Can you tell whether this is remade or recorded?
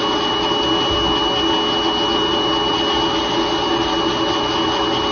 recorded